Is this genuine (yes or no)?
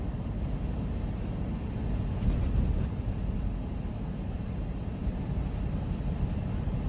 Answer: yes